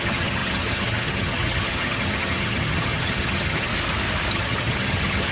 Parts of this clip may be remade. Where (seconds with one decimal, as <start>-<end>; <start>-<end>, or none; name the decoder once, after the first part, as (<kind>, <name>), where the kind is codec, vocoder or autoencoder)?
0.0-3.7 (vocoder, HiFi-GAN); 4.3-5.3